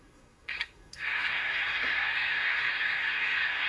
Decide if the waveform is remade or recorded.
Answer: remade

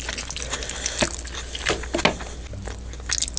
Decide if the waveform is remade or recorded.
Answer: recorded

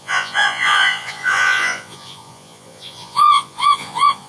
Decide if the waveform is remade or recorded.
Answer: remade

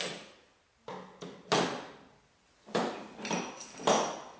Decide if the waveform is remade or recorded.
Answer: recorded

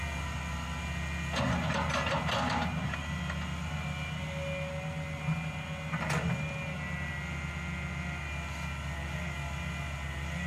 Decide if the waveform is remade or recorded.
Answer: recorded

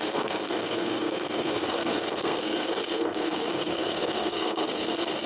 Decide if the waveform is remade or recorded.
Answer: remade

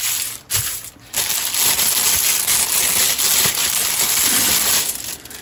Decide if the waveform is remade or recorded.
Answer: recorded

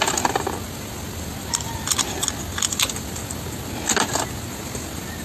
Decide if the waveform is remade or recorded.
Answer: recorded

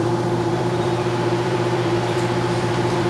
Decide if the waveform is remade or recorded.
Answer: remade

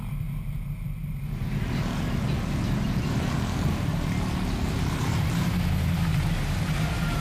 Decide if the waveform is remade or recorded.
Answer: recorded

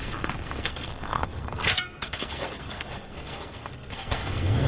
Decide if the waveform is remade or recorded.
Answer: remade